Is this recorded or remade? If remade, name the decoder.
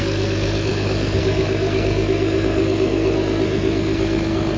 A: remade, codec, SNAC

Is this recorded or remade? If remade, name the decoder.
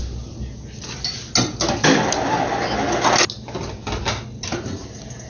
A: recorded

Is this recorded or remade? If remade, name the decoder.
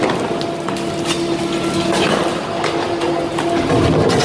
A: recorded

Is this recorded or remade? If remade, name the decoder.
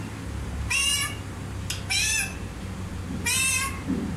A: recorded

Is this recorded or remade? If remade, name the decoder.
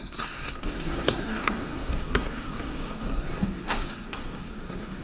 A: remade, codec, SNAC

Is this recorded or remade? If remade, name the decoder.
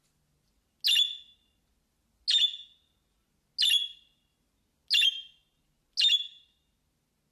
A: recorded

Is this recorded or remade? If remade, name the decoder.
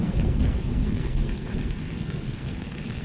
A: remade, codec, SNAC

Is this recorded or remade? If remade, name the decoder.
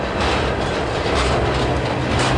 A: recorded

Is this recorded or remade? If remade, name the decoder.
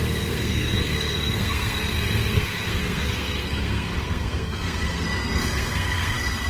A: remade, codec, SNAC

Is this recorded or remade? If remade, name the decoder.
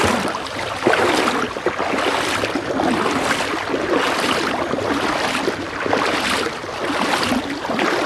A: recorded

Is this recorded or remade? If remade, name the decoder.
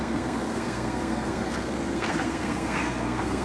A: remade, codec, SNAC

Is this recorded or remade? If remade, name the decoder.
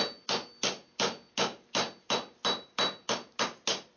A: recorded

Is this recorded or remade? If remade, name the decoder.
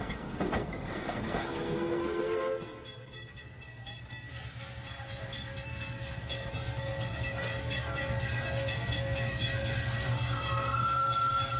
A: remade, codec, SNAC